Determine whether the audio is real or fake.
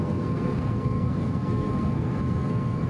fake